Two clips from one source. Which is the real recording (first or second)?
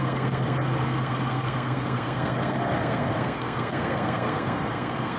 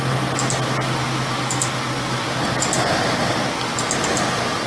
second